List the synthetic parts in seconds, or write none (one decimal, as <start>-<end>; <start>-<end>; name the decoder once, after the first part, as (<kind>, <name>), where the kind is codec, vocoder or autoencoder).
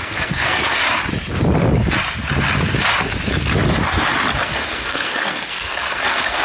0.0-0.8 (codec, SNAC); 4.4-6.4